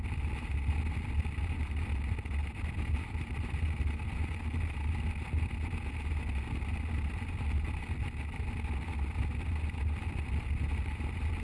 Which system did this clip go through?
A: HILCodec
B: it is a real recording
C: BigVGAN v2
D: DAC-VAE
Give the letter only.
B